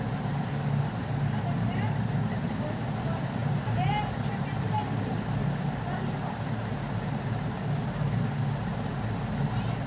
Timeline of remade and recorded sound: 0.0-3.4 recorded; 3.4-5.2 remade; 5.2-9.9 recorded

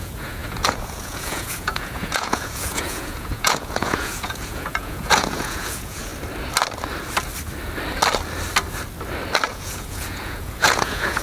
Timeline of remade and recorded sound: 0.0-6.1 remade; 6.1-9.5 recorded; 9.5-11.2 remade